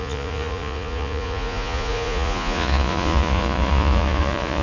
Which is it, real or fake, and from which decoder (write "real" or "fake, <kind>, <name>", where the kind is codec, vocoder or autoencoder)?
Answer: fake, vocoder, Vocos